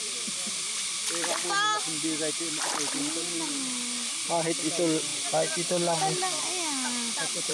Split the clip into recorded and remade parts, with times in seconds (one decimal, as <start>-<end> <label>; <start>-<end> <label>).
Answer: 0.0-7.5 recorded